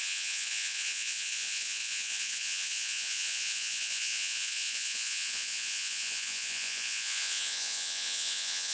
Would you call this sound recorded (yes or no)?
no